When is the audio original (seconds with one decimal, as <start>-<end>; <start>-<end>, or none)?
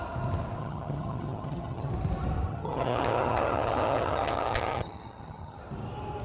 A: 0.0-0.6; 1.9-2.5; 5.6-6.2